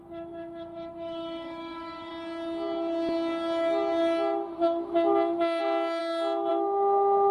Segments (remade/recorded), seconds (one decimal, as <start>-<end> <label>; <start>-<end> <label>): 0.0-2.1 remade; 2.1-5.6 recorded; 5.6-6.0 remade; 6.0-6.5 recorded; 6.5-7.3 remade